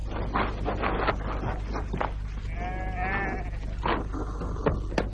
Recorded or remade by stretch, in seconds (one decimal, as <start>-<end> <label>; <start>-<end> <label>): 0.0-5.1 recorded